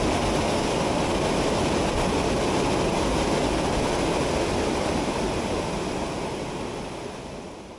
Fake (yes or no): no